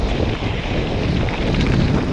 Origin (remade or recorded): recorded